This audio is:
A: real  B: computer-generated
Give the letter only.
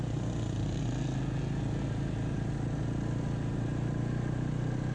A